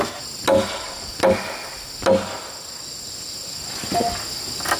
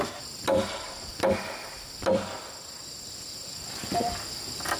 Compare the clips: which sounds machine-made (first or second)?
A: second